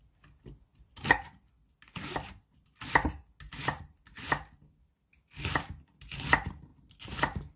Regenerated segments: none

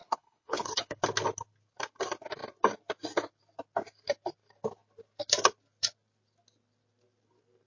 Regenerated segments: 0.0-1.0

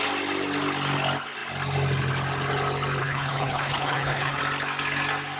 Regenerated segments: 3.0-4.4

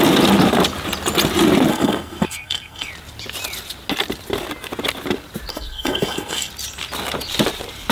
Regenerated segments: 1.7-2.9; 5.5-6.5

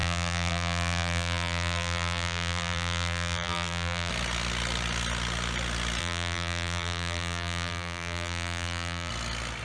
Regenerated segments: 0.0-4.1; 6.0-9.1